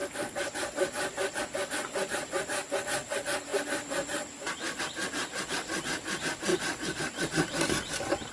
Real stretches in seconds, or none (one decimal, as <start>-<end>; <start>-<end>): 0.0-6.5